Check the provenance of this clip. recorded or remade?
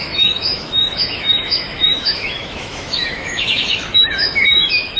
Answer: remade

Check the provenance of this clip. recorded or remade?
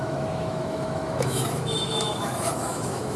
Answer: remade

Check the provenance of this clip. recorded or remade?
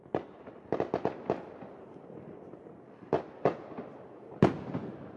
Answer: recorded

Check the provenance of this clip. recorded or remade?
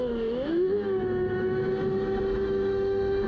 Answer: remade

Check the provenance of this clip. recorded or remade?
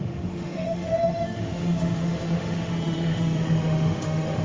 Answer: remade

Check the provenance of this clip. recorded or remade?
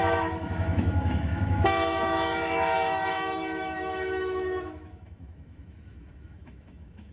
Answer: remade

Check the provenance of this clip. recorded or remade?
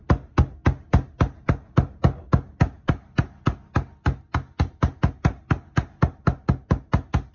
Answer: recorded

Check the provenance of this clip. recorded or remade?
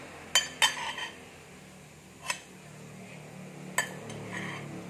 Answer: recorded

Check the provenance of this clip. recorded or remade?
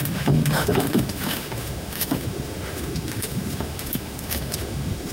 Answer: remade